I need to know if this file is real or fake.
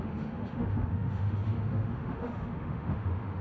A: fake